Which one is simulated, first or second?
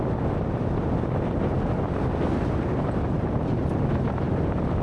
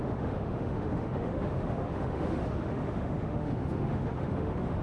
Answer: second